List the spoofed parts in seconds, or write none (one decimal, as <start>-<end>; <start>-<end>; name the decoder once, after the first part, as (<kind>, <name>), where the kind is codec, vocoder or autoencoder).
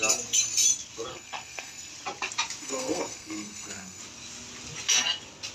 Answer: 1.1-1.9 (codec, SNAC); 2.6-4.0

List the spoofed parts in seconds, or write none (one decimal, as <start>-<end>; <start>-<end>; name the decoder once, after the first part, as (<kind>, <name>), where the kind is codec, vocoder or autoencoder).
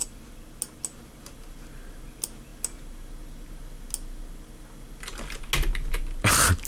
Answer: none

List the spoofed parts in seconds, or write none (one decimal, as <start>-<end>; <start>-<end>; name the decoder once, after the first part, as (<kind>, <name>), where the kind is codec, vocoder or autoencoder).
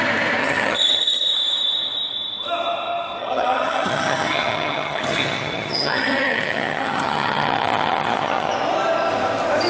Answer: 0.4-1.3 (vocoder, HiFi-GAN); 3.2-8.5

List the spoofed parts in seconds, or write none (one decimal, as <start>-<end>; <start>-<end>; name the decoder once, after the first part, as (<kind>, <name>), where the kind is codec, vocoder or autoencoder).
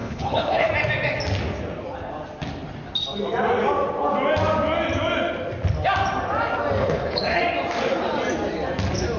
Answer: 0.0-0.7 (codec, HILCodec); 6.8-7.4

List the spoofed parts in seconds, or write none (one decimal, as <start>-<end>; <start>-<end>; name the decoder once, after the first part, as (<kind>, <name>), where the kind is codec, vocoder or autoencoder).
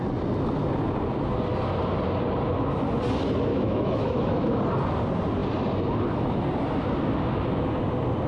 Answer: 3.5-4.6 (autoencoder, DAC-VAE)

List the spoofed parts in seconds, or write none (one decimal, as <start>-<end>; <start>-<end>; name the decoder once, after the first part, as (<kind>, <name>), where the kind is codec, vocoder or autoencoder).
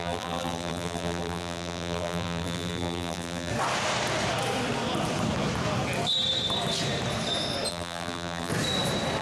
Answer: 0.0-3.5 (vocoder, BigVGAN v2); 7.7-8.5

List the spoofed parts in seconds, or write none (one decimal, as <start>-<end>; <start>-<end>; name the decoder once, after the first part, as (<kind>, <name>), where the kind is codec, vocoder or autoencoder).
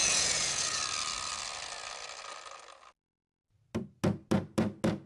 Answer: 0.0-0.8 (vocoder, Vocos)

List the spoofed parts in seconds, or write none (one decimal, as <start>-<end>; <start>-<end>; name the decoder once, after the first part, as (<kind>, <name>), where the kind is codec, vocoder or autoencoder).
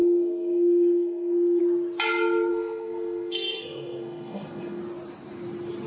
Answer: 0.0-1.6 (codec, SNAC); 2.5-4.8